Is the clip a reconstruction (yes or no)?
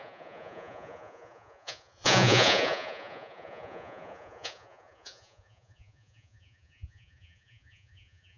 yes